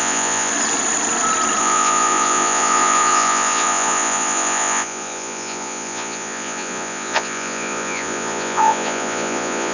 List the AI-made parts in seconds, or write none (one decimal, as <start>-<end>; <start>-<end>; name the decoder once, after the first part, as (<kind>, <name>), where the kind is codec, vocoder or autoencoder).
0.0-0.5 (vocoder, Vocos); 1.6-9.7